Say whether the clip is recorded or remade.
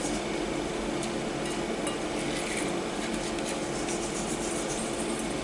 recorded